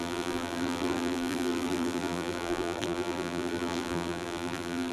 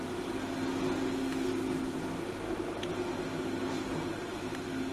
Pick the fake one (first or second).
first